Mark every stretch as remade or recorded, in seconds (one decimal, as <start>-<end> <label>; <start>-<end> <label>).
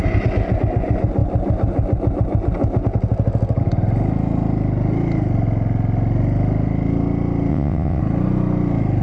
0.0-7.5 recorded; 7.5-8.0 remade; 8.0-9.0 recorded